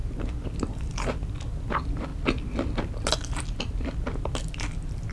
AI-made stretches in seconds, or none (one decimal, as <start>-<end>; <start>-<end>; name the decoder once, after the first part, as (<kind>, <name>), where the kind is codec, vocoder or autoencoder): none